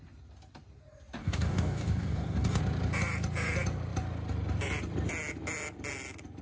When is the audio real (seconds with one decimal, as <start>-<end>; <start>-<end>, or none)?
0.0-1.2; 2.6-6.4